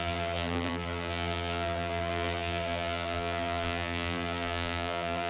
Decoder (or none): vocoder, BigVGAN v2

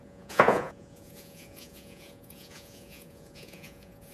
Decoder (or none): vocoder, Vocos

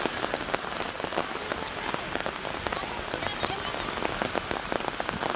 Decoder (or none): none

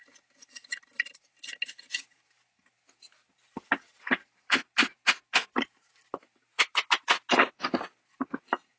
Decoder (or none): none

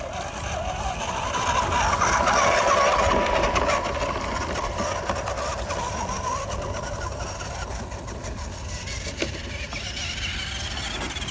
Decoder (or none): none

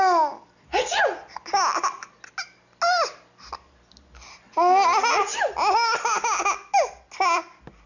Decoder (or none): none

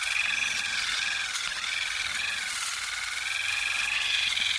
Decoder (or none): none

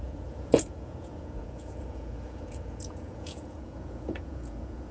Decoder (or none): vocoder, Vocos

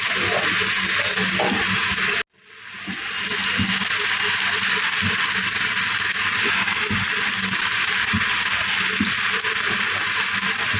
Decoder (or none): none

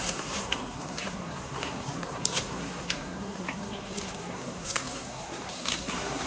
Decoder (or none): codec, SNAC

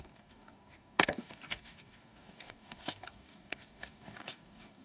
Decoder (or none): codec, DAC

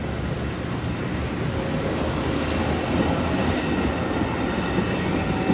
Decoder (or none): none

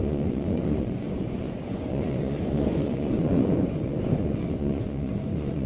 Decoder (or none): vocoder, Vocos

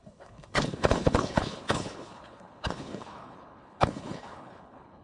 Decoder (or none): codec, HILCodec